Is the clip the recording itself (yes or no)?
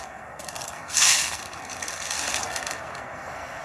no